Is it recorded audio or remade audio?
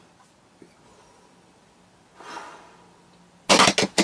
recorded